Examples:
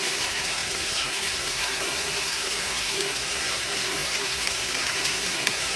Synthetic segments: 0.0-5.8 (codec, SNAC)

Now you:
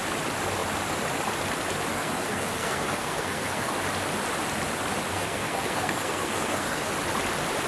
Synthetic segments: 1.9-3.7 (codec, SNAC); 5.1-6.9

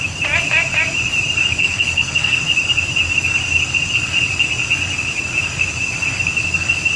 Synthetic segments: 1.6-2.4 (codec, SNAC)

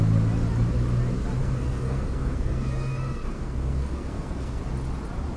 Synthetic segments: 1.4-4.6 (codec, SNAC)

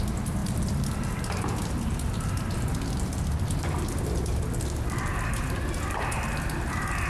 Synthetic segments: none

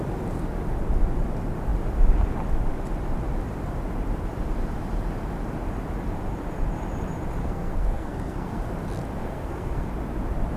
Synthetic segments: 7.4-8.6 (codec, SNAC); 9.2-9.9